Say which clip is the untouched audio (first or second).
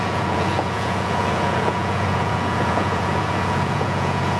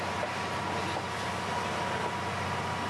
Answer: second